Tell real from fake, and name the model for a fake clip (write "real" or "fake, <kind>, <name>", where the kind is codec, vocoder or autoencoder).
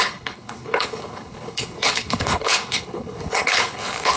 fake, codec, HILCodec